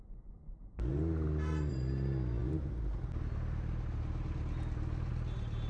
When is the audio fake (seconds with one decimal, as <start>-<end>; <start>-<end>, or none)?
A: none